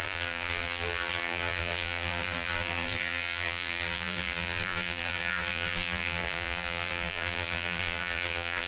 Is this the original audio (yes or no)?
no